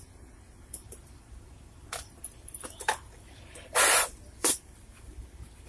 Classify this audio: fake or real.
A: fake